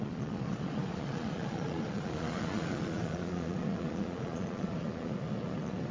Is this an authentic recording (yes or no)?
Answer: no